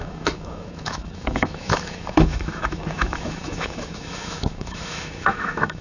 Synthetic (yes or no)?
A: yes